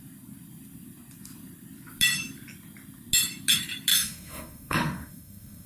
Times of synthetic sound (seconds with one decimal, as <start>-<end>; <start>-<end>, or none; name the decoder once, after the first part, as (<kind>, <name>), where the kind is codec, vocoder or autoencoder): 3.9-5.7 (autoencoder, DAC-VAE)